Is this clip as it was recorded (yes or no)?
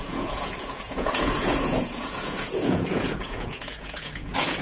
no